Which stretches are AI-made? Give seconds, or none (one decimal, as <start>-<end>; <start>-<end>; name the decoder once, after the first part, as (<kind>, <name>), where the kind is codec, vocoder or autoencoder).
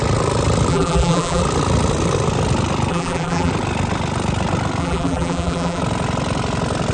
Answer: 0.7-1.4 (vocoder, BigVGAN v2); 2.9-3.5; 4.8-5.8